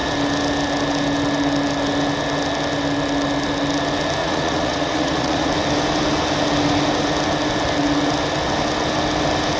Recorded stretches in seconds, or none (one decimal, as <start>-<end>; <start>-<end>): 0.0-4.2; 5.5-9.6